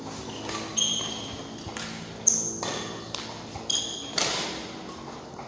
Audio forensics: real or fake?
real